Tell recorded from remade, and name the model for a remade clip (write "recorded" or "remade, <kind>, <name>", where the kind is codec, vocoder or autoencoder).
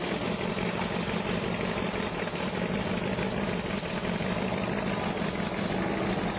recorded